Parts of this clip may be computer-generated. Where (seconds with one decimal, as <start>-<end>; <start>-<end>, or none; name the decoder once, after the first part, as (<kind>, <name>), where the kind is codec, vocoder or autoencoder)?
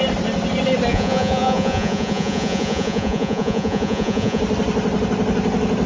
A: 0.9-4.4 (vocoder, Vocos)